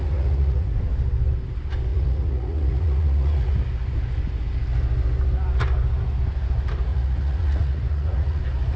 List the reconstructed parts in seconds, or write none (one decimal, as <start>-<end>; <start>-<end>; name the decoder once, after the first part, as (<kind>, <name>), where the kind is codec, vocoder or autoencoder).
0.0-0.7 (vocoder, Vocos); 1.9-3.5; 6.9-8.4